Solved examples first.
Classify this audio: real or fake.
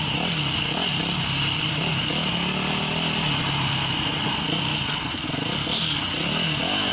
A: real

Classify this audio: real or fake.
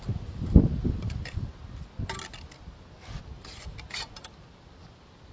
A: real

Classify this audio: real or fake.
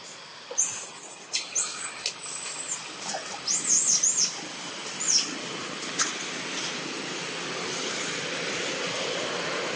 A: real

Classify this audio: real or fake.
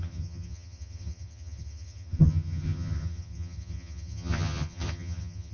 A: fake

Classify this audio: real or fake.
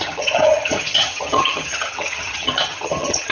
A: fake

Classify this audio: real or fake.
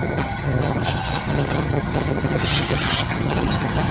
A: fake